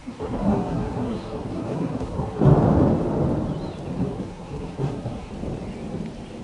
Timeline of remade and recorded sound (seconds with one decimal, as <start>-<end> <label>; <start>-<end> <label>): 0.0-2.5 remade; 2.5-4.0 recorded; 4.0-5.3 remade; 5.3-6.4 recorded